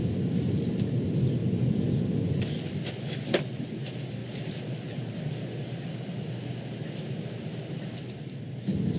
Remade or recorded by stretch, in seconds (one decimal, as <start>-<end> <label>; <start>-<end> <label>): 0.0-9.0 recorded